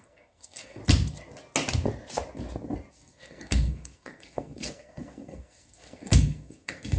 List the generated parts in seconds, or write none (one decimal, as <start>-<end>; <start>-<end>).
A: 0.0-0.8; 2.9-7.0